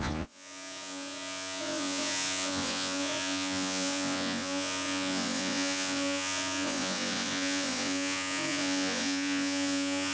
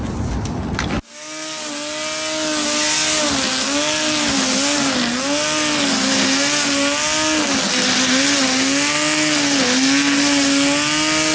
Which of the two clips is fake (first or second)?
first